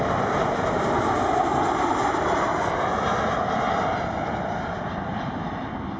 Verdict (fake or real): real